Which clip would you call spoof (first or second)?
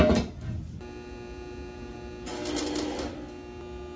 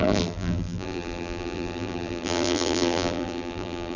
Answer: second